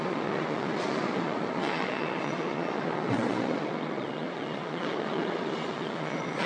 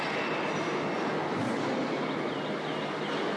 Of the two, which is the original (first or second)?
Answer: second